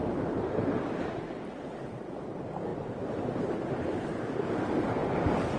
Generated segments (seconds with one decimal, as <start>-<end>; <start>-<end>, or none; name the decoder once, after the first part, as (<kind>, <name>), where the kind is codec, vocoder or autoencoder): 0.0-5.0 (vocoder, BigVGAN v2)